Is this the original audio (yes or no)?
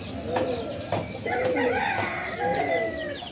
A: yes